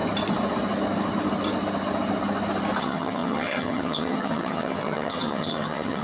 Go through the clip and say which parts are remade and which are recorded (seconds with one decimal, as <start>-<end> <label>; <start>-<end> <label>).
0.0-2.8 recorded; 2.8-6.0 remade